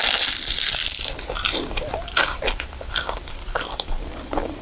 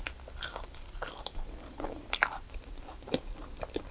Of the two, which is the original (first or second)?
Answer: second